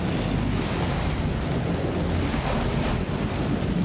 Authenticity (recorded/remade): recorded